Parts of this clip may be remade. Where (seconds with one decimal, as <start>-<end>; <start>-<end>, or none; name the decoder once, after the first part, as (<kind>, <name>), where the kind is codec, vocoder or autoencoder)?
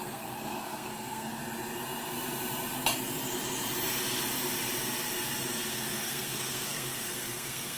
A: 0.0-1.4 (codec, SNAC); 5.7-7.8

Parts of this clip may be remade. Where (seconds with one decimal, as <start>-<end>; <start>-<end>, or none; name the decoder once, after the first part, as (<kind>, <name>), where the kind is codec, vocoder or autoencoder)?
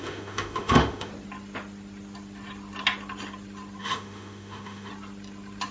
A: 0.0-1.1 (autoencoder, DAC-VAE); 3.8-4.9